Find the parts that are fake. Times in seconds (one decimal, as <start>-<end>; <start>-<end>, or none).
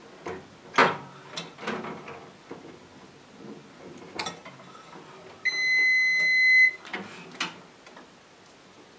none